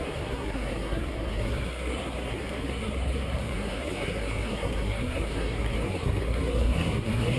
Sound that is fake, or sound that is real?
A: fake